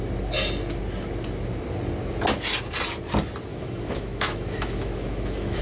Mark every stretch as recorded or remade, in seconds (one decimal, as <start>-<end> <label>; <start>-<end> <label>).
0.0-3.5 recorded; 3.5-5.6 remade